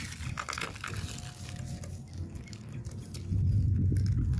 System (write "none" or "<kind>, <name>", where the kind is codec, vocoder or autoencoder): none